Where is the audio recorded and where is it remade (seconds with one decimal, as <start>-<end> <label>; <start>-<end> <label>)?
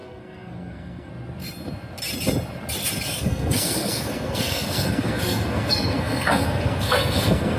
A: 0.0-1.1 remade; 1.1-3.1 recorded; 3.1-7.6 remade